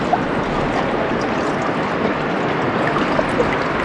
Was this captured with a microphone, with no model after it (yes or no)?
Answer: yes